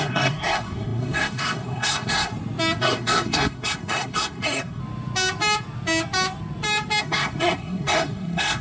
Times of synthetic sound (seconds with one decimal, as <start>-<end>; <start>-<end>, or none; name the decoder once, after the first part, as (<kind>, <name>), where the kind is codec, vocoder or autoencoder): 0.0-2.3 (codec, SNAC); 2.8-4.8; 7.0-8.6